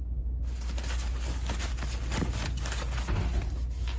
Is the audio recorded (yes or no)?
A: yes